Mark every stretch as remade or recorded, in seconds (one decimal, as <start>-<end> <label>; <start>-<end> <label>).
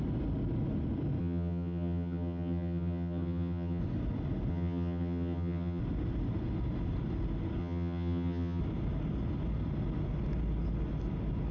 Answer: 0.0-1.2 recorded; 1.2-3.8 remade; 3.8-4.5 recorded; 4.5-5.8 remade; 5.8-7.6 recorded; 7.6-8.6 remade; 8.6-11.5 recorded